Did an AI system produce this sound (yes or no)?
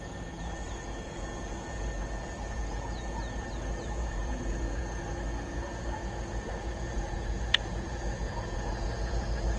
yes